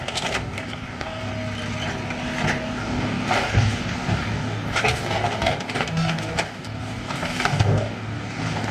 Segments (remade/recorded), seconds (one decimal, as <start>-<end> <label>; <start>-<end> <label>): 0.0-1.3 remade; 1.3-2.6 recorded; 2.6-8.7 remade